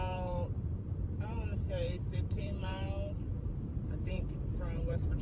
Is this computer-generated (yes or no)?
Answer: yes